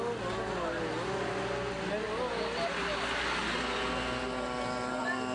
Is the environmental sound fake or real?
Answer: real